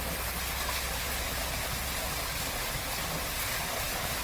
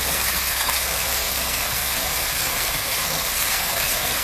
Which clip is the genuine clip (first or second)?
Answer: first